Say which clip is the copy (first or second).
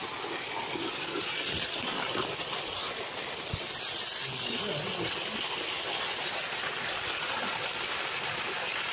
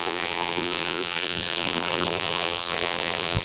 second